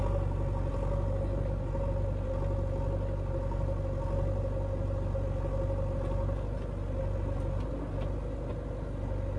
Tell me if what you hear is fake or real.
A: real